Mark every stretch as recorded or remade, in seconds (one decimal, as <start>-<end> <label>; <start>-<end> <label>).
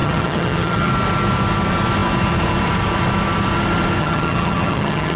0.0-0.9 remade; 0.9-4.0 recorded; 4.0-5.2 remade